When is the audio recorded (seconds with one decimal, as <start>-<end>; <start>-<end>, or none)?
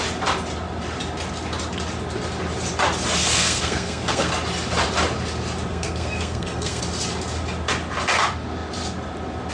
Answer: 0.0-3.2; 4.3-5.7; 6.8-9.5